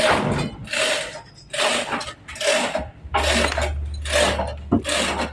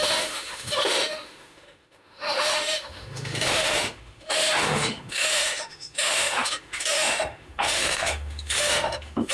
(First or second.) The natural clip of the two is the first